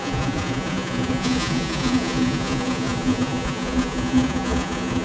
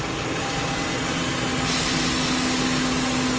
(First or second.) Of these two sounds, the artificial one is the first